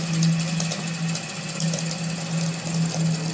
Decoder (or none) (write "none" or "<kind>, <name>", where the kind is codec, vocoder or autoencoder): none